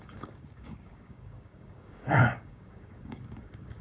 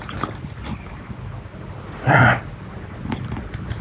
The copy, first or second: first